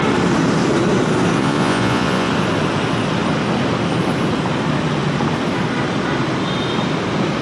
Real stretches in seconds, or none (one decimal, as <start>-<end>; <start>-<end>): 0.0-1.4; 2.3-7.4